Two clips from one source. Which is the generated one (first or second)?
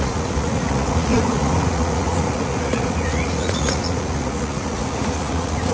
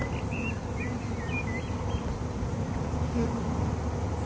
first